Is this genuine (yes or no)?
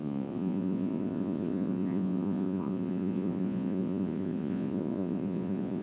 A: no